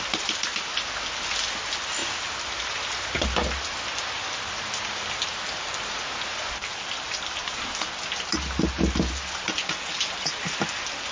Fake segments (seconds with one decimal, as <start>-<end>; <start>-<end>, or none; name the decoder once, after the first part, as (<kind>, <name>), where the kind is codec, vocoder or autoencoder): none